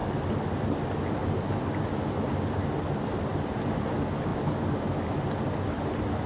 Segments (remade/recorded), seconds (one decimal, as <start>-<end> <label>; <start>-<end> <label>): 0.0-6.3 recorded